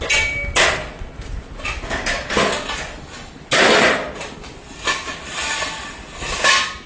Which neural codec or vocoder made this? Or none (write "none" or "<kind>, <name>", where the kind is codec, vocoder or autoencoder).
none